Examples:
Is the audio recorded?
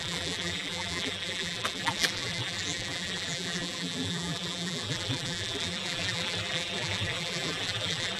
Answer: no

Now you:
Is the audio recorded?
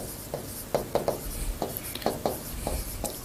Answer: yes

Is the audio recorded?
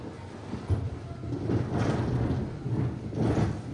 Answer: yes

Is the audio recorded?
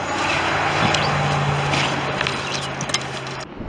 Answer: yes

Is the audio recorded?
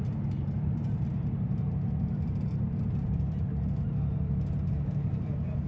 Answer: no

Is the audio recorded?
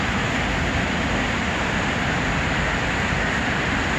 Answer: no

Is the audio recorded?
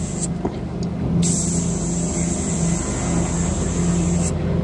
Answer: yes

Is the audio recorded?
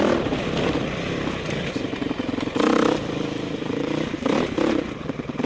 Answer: no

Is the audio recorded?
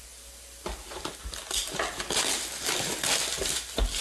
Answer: no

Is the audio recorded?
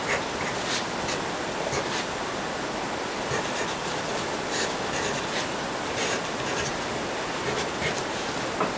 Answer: yes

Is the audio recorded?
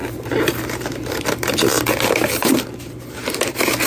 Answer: no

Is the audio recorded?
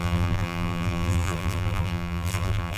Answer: no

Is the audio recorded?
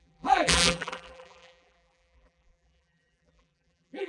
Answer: no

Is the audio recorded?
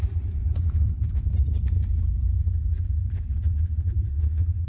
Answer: no